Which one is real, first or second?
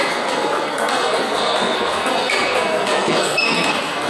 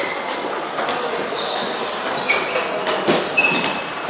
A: second